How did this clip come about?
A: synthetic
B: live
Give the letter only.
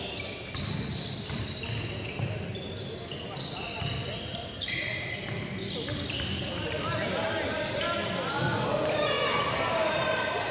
B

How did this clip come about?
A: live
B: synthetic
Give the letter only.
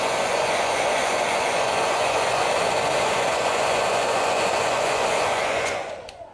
B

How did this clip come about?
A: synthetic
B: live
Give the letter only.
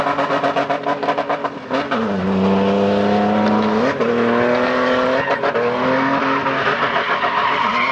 B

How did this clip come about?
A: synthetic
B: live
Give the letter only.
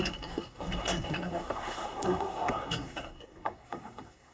A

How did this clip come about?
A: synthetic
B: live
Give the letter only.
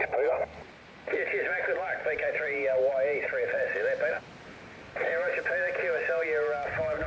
B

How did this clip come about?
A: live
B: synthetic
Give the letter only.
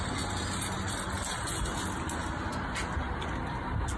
A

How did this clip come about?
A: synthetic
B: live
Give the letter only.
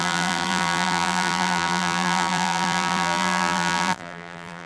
A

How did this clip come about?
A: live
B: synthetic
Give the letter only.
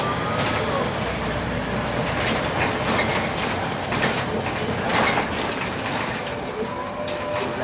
A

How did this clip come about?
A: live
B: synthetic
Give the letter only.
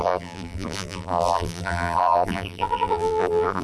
B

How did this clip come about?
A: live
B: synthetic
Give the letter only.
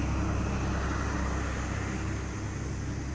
A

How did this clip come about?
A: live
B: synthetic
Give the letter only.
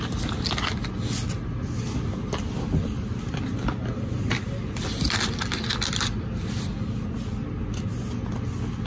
A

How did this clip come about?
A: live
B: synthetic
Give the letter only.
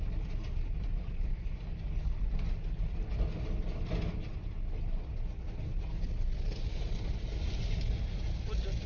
A